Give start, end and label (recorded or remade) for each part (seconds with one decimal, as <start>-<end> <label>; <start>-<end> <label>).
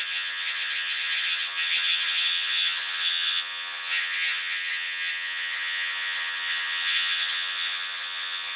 0.0-8.6 remade